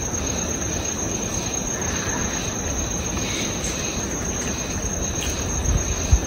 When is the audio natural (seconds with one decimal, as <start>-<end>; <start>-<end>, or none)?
0.0-6.3